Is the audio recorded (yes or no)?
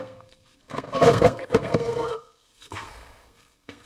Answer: no